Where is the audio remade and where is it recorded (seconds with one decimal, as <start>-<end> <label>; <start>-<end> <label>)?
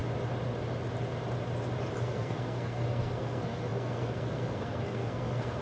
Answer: 0.0-2.0 recorded; 2.0-5.6 remade